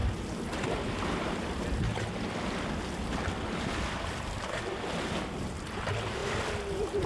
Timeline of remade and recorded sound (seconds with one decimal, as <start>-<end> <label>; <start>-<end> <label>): 0.0-6.2 recorded; 6.2-7.1 remade